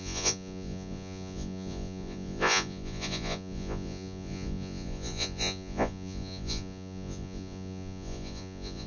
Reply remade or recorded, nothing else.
remade